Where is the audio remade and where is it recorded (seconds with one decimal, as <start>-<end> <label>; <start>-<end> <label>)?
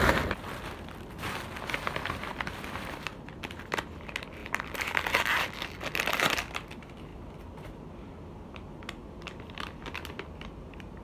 0.0-2.3 recorded; 2.3-3.4 remade; 3.4-7.1 recorded; 7.1-8.1 remade; 8.1-9.0 recorded; 9.0-11.0 remade